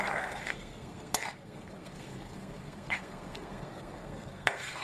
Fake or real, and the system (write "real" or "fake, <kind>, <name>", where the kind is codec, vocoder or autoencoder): fake, codec, SNAC